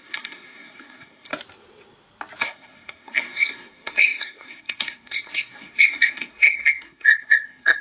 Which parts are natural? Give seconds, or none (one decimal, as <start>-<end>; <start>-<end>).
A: 1.3-2.4